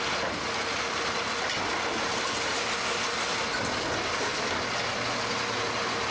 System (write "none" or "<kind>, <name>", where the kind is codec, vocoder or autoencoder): none